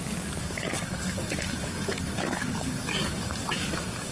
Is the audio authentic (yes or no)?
no